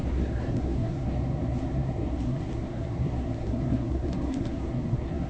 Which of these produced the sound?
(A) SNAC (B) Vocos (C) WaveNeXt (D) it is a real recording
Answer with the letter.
A